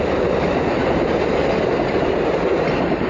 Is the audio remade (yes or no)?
no